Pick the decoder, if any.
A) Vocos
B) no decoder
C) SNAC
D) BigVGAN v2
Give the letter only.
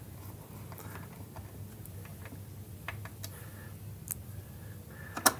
B